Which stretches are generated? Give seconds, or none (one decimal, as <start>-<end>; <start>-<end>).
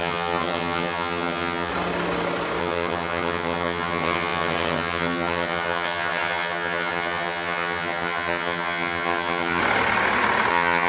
0.0-1.7; 2.6-9.6; 10.5-10.9